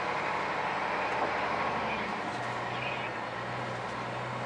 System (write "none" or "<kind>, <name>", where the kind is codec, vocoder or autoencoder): none